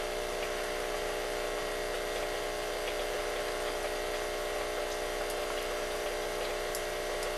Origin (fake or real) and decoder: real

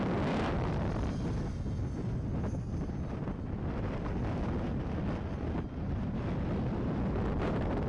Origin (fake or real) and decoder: real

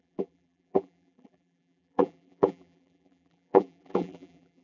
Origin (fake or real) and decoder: fake, vocoder, BigVGAN v2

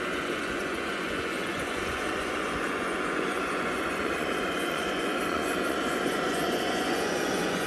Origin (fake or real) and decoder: fake, vocoder, Vocos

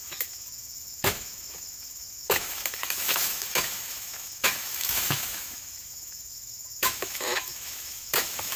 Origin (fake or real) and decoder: fake, autoencoder, DAC-VAE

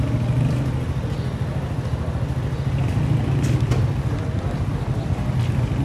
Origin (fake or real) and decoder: real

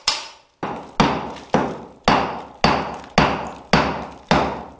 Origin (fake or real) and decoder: real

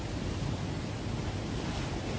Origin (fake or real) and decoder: real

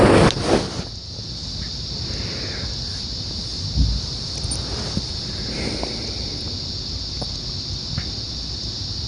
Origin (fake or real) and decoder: real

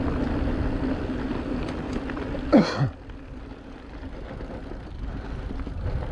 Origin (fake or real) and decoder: real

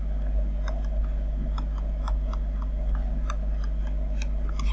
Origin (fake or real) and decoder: real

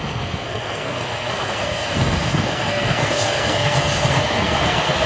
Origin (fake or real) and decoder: fake, codec, SNAC